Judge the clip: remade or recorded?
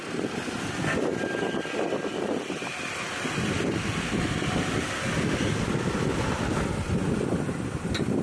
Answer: recorded